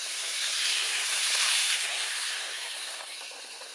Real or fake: fake